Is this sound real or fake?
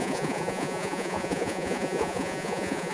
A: fake